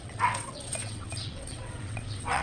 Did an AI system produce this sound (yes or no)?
yes